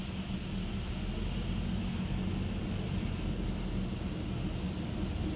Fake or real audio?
real